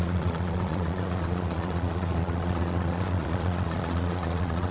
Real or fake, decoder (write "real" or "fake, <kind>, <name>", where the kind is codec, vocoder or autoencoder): fake, vocoder, Vocos